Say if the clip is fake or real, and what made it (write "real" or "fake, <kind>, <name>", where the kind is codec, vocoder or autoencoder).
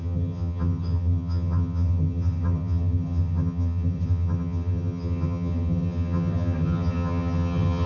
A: fake, vocoder, HiFi-GAN